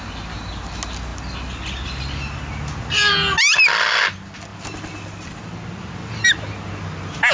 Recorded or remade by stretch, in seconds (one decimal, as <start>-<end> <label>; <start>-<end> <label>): 0.0-7.3 recorded

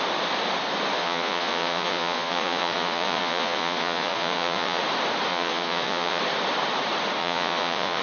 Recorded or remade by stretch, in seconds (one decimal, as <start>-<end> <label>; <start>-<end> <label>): 0.0-1.0 recorded; 1.0-4.8 remade; 4.8-5.3 recorded; 5.3-6.2 remade; 6.2-7.2 recorded; 7.2-8.0 remade

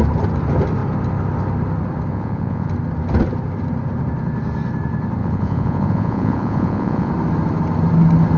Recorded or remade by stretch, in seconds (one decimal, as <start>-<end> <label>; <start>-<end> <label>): 0.0-2.1 recorded; 2.1-2.7 remade; 2.7-5.2 recorded; 5.2-7.1 remade; 7.1-8.4 recorded

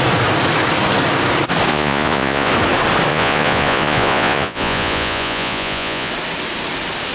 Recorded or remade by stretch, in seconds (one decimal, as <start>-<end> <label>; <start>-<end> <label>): 0.0-1.7 recorded; 1.7-2.5 remade; 2.5-3.1 recorded; 3.1-6.1 remade; 6.1-7.1 recorded

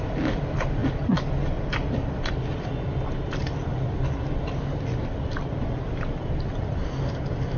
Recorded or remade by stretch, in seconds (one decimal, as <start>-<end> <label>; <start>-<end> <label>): 0.0-7.6 recorded

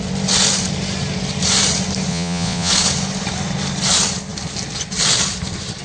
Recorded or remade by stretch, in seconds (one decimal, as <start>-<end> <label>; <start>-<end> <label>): 0.0-2.1 recorded; 2.1-2.7 remade; 2.7-5.8 recorded